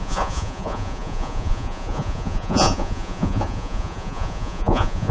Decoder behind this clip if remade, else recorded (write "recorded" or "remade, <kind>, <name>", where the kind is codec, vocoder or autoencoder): remade, vocoder, Vocos